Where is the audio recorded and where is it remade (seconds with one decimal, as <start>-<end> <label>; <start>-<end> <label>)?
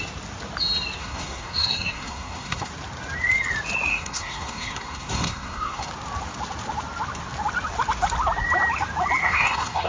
0.0-1.0 recorded; 1.0-2.7 remade; 2.7-3.9 recorded; 3.9-5.9 remade; 5.9-9.2 recorded; 9.2-9.9 remade